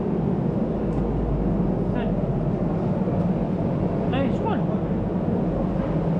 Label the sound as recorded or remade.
recorded